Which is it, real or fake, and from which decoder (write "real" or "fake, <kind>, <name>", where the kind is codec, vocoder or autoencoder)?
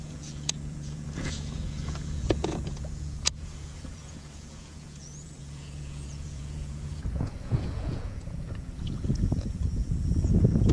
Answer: fake, vocoder, Vocos